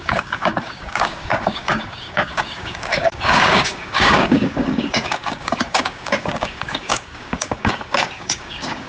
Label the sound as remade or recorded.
remade